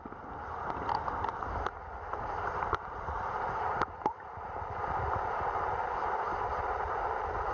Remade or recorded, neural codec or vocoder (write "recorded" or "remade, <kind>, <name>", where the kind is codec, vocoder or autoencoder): recorded